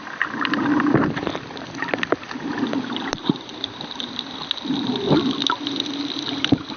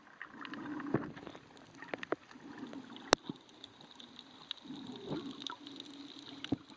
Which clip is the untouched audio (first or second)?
second